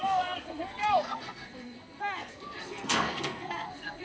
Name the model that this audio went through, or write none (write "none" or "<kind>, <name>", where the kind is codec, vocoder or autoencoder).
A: codec, SNAC